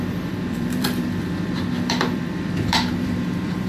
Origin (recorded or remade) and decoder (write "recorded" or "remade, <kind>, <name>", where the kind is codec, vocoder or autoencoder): remade, vocoder, BigVGAN v2